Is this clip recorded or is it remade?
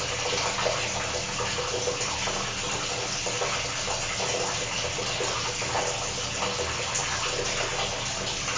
recorded